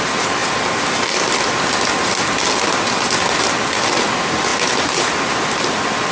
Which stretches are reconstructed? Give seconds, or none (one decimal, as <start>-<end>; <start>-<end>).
none